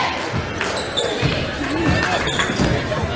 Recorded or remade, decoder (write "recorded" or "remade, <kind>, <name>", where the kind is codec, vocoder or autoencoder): recorded